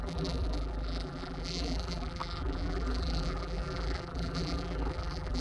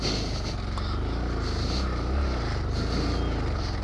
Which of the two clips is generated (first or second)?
first